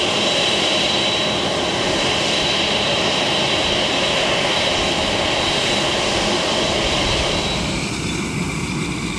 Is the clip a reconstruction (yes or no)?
yes